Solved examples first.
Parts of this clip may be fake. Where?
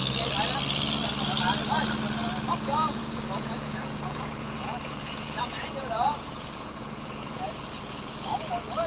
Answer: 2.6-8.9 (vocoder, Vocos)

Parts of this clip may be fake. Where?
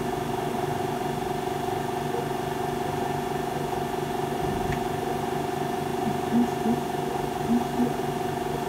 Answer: none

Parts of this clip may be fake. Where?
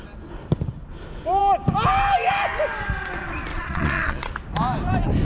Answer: 3.5-4.3 (vocoder, Vocos)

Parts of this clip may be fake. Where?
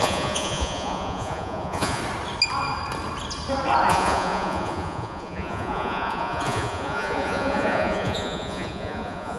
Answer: 0.0-2.0 (vocoder, Vocos); 3.9-9.4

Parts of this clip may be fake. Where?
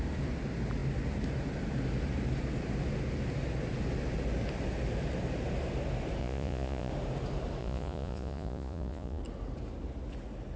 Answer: 6.2-6.9 (vocoder, Vocos); 7.6-9.2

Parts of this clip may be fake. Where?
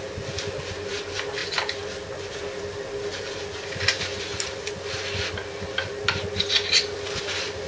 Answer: none